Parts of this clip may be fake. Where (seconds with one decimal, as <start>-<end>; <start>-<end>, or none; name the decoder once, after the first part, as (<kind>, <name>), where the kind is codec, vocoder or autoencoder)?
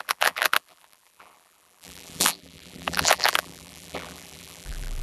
0.0-5.0 (vocoder, BigVGAN v2)